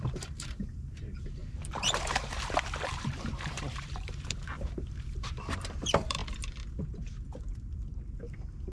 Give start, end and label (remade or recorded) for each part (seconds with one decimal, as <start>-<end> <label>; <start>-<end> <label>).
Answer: 0.0-6.2 remade; 6.2-8.2 recorded; 8.2-8.7 remade